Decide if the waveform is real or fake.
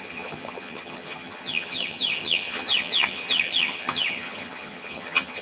fake